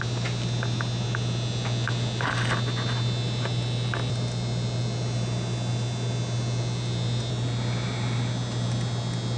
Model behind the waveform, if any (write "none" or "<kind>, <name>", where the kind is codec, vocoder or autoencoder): none